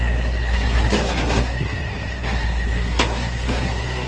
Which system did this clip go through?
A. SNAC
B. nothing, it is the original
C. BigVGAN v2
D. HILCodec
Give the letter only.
A